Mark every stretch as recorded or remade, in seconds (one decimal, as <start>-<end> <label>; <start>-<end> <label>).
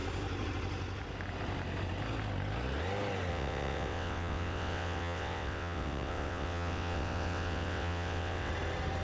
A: 0.0-3.3 recorded; 3.3-8.5 remade; 8.5-9.0 recorded